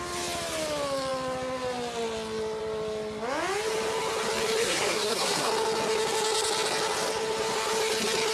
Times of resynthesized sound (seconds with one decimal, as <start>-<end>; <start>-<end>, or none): 4.6-5.5